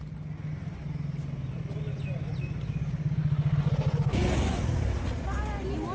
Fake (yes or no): no